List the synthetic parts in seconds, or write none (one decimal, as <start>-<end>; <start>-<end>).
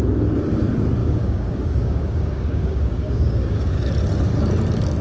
1.0-3.8